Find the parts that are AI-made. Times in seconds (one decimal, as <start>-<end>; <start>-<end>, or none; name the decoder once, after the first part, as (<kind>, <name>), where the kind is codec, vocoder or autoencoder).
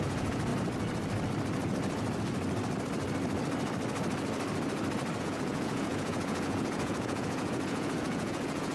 0.0-0.5 (vocoder, Vocos); 5.2-8.7